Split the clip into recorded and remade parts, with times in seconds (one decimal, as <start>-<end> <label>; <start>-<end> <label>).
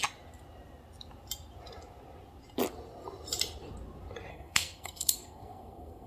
0.0-4.3 recorded; 4.3-6.1 remade